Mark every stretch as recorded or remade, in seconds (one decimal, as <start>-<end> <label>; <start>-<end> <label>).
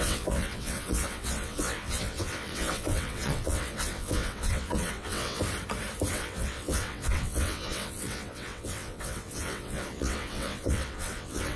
0.0-5.4 remade; 5.4-6.1 recorded; 6.1-11.6 remade